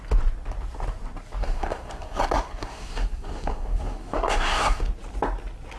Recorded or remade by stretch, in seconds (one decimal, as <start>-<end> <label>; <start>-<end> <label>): 0.0-1.4 recorded; 1.4-4.9 remade; 4.9-5.8 recorded

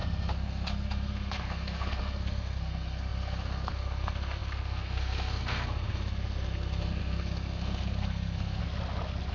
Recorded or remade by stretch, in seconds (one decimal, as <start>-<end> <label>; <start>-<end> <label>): 0.0-8.6 remade; 8.6-9.3 recorded